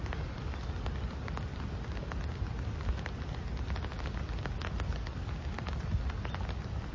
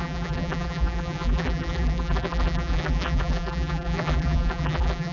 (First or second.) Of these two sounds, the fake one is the second